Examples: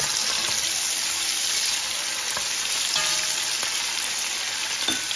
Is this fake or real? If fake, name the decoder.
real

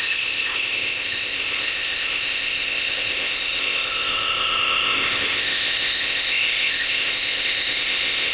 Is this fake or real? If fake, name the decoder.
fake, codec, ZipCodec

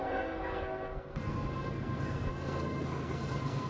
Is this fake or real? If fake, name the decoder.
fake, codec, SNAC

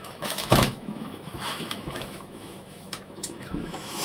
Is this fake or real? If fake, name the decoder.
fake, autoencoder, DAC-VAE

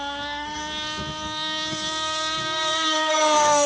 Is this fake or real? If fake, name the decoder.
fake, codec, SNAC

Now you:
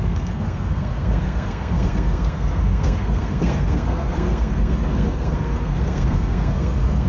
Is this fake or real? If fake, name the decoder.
fake, codec, SNAC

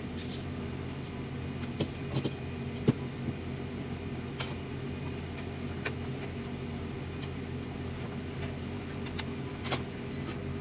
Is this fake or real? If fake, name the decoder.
real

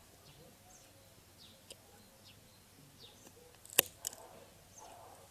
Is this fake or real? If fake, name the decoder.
real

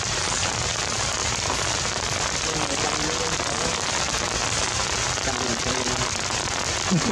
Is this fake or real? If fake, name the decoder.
real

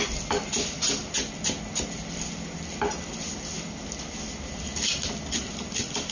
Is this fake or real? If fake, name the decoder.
real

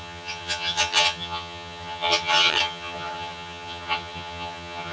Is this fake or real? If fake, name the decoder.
fake, vocoder, HiFi-GAN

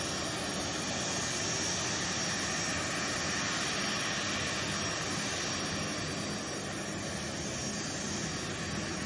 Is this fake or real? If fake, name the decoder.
real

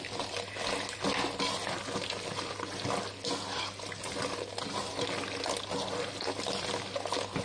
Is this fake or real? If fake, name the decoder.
real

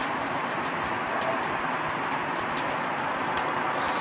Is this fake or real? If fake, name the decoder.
real